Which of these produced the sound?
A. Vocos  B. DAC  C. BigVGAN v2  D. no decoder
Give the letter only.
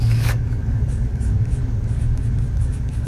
B